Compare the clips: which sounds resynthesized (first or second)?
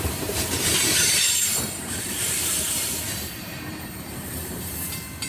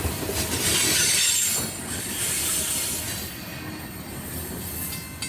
first